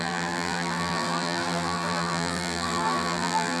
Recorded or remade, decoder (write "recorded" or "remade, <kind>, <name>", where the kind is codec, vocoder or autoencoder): remade, vocoder, BigVGAN v2